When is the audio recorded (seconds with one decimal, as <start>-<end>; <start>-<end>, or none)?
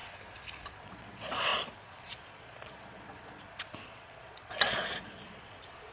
0.0-0.6